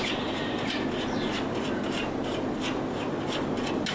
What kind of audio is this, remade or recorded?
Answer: recorded